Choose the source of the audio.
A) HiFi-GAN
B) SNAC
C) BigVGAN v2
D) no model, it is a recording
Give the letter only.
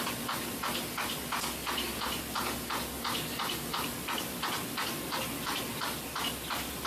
D